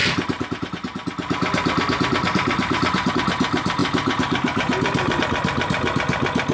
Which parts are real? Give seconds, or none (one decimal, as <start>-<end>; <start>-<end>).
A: 3.1-3.8; 5.2-6.5